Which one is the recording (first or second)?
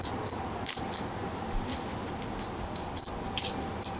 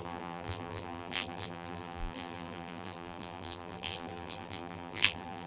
first